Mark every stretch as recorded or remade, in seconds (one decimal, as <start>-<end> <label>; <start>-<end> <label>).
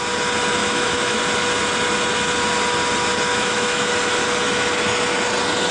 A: 0.0-0.6 recorded; 0.6-1.2 remade; 1.2-3.3 recorded; 3.3-3.9 remade; 3.9-5.7 recorded